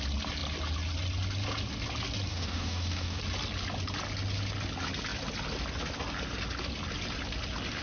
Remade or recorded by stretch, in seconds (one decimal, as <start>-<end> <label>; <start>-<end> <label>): 0.0-2.3 recorded; 2.3-3.2 remade; 3.2-7.8 recorded